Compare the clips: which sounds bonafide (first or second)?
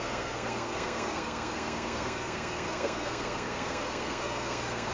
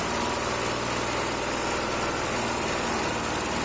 second